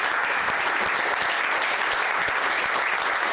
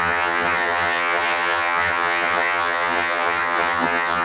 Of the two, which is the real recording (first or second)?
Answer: first